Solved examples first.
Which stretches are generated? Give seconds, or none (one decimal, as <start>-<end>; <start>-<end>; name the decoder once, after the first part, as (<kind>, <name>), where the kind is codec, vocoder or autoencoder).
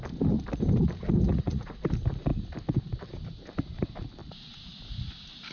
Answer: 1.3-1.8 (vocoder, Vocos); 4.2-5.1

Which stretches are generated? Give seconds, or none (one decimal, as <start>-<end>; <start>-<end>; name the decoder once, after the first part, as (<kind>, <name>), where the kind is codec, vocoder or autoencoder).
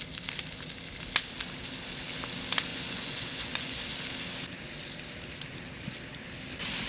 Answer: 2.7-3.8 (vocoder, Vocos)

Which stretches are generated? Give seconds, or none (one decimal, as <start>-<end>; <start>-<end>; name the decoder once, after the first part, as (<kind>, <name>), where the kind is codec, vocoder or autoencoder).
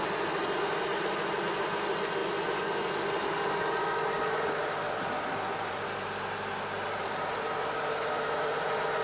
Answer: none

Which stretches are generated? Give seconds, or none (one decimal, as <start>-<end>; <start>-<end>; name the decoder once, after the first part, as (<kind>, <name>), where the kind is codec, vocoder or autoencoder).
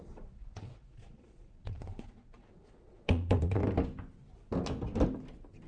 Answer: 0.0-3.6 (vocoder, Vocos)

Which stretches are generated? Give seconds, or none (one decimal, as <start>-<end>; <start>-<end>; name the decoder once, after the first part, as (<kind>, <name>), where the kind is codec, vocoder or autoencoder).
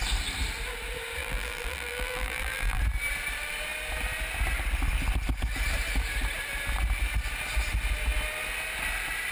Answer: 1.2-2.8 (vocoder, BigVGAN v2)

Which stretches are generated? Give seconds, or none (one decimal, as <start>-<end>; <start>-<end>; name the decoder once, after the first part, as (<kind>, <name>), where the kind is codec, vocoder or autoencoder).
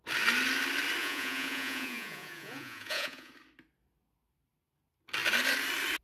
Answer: 1.0-3.3 (vocoder, Vocos)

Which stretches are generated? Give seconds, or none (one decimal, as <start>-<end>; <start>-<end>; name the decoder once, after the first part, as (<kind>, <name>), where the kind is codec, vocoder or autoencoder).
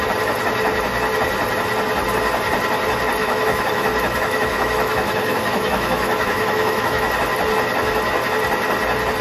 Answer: 3.2-7.1 (autoencoder, DAC-VAE)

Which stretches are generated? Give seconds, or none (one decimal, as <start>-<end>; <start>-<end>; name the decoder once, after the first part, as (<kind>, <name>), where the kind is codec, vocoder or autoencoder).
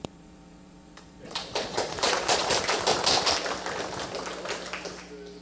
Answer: 0.0-2.5 (vocoder, Vocos)